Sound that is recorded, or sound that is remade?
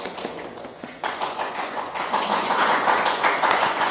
remade